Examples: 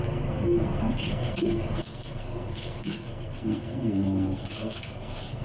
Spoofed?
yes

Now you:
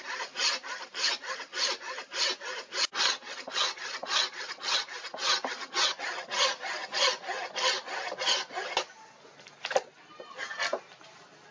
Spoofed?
no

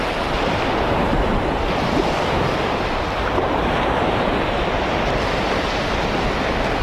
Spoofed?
no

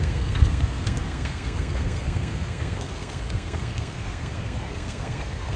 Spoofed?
yes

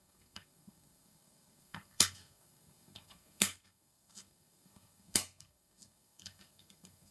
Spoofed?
yes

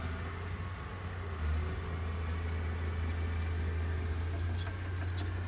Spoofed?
no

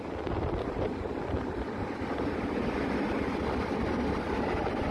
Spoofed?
no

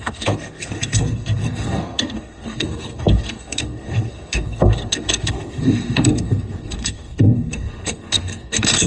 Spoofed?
yes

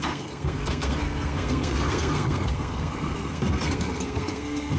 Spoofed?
yes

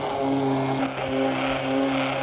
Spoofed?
no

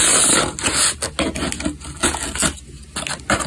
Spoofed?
no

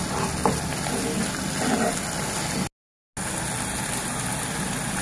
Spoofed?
no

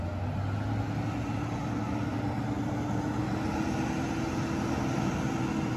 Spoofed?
no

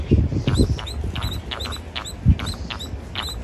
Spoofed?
no